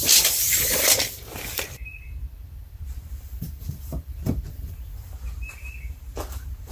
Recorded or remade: remade